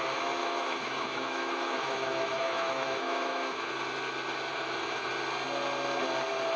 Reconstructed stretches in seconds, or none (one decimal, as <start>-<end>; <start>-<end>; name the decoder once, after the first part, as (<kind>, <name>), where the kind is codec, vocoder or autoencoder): 0.4-3.7 (autoencoder, DAC-VAE); 4.5-5.1